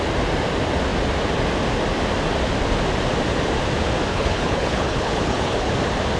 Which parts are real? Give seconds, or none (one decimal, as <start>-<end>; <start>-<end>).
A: 0.0-4.1; 5.7-6.2